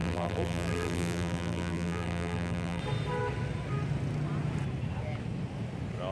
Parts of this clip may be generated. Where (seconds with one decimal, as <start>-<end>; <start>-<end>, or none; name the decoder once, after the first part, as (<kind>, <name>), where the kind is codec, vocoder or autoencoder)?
0.0-2.8 (vocoder, BigVGAN v2)